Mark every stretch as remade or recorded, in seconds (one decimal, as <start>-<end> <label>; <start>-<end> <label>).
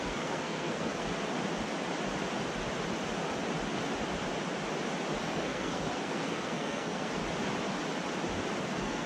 0.0-1.1 remade; 1.1-5.2 recorded; 5.2-7.2 remade; 7.2-8.6 recorded; 8.6-9.1 remade